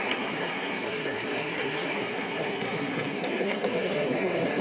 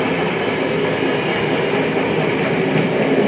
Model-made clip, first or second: first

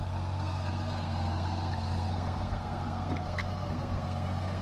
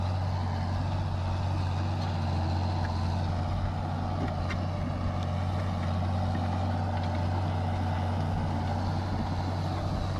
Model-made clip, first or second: first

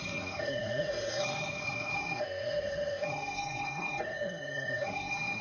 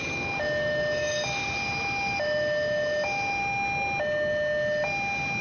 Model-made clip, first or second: first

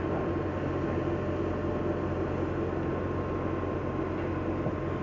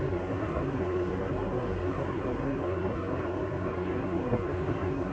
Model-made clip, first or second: second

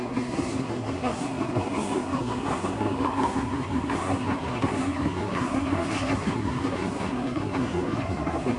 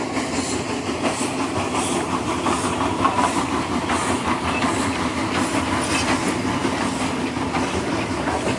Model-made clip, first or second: first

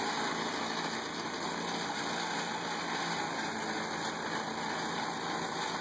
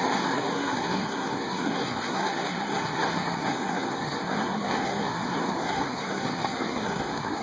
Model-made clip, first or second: second